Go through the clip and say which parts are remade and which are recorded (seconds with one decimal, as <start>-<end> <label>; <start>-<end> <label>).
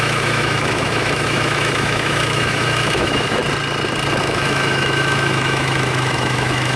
0.0-3.4 remade; 3.4-4.2 recorded; 4.2-6.8 remade